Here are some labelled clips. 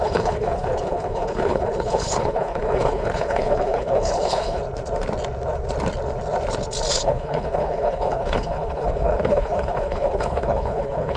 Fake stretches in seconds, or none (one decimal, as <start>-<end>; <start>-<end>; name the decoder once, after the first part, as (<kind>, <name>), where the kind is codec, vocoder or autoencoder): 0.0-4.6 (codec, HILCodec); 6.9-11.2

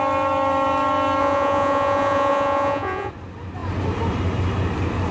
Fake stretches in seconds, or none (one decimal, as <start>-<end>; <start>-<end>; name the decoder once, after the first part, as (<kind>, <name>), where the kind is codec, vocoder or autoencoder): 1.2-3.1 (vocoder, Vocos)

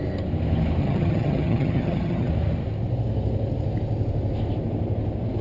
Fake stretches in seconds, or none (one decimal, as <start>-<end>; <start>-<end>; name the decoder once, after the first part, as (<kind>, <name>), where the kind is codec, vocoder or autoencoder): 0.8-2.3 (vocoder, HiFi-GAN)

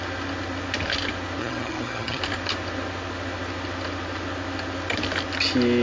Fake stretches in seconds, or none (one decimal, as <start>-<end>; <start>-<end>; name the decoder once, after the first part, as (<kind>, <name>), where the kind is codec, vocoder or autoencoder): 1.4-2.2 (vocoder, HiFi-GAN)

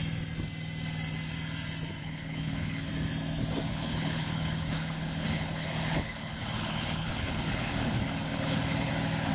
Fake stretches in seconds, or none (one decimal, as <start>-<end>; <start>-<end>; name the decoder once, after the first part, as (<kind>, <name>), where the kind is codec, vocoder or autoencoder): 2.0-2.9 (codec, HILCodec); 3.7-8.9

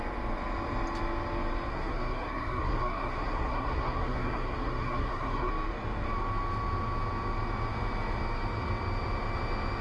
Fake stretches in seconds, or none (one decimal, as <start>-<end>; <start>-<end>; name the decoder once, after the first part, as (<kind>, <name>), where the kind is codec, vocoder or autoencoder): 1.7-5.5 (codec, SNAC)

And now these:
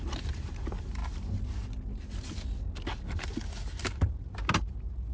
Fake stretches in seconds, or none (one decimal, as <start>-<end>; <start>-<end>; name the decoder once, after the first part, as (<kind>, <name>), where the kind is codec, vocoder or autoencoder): none